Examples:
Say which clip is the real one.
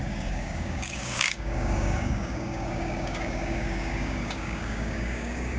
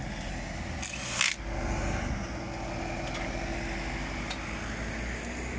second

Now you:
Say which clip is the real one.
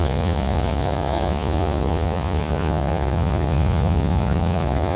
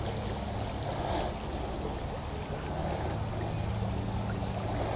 second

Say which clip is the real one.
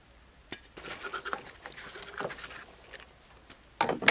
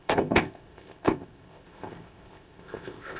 first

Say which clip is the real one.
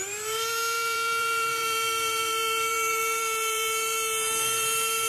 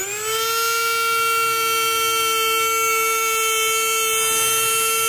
second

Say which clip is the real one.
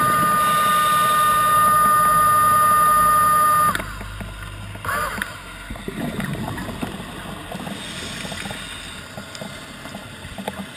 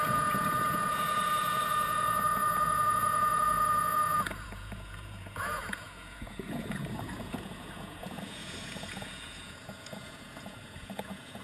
first